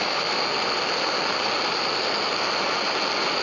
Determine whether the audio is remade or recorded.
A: recorded